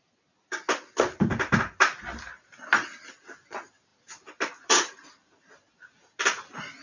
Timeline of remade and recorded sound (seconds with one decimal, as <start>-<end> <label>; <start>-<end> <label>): 0.0-3.9 recorded; 3.9-5.5 remade; 5.5-6.8 recorded